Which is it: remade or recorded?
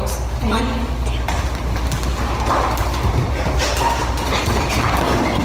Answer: recorded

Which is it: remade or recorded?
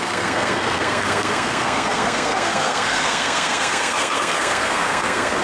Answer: remade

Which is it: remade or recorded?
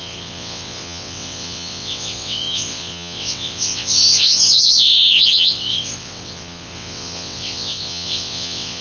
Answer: remade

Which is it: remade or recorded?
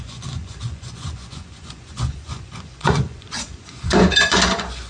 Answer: remade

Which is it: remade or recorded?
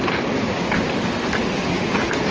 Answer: recorded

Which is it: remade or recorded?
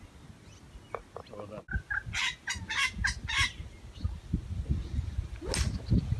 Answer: recorded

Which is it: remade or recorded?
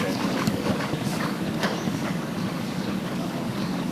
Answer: remade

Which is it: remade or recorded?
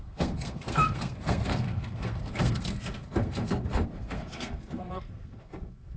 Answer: remade